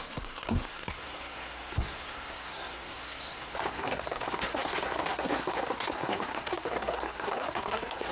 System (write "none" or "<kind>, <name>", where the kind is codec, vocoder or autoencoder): codec, SNAC